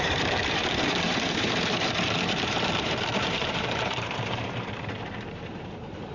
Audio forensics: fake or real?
fake